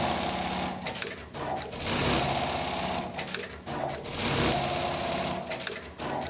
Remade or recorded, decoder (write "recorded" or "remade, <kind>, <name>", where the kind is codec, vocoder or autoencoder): recorded